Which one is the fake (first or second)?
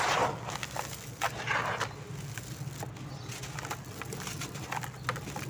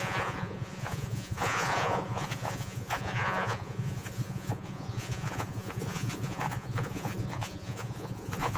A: second